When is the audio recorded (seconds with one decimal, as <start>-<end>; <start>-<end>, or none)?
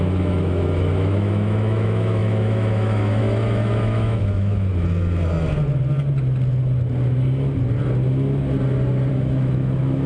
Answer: 4.7-9.1